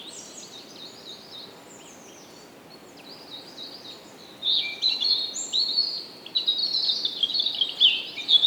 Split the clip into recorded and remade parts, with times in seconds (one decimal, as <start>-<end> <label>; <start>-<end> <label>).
0.0-8.5 recorded